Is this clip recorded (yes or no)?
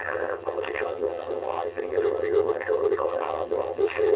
no